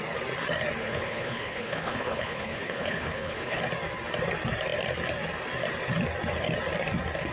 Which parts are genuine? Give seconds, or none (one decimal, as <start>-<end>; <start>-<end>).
0.0-0.8; 3.6-7.3